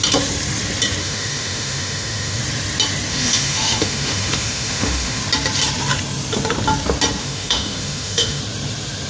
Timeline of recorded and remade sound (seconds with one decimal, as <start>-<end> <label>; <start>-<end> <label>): 0.0-1.0 recorded; 1.0-2.4 remade; 2.4-3.1 recorded; 3.1-5.2 remade; 5.2-7.2 recorded; 7.2-8.4 remade; 8.4-9.1 recorded